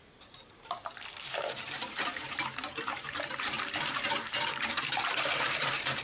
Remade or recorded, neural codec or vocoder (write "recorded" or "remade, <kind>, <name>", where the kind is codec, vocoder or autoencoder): remade, vocoder, BigVGAN v2